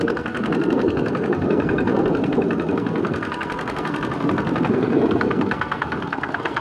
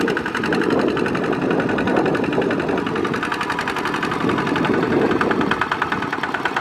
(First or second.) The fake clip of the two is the first